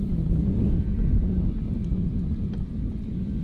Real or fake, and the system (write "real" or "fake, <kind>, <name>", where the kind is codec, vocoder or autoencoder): real